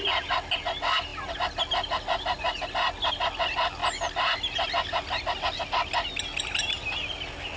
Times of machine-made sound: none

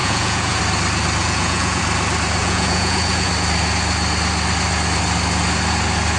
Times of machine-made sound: 0.0-0.6 (vocoder, Vocos); 1.2-1.8; 2.4-3.3

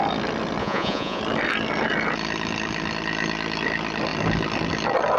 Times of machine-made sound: 0.6-1.2 (vocoder, Vocos)

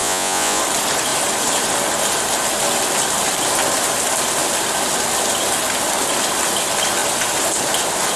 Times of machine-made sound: 0.0-0.6 (vocoder, Vocos)

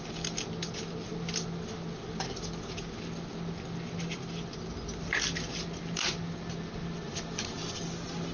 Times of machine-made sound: none